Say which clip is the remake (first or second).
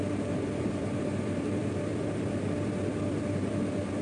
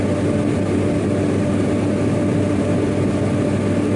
first